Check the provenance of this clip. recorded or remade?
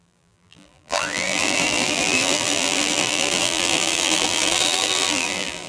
remade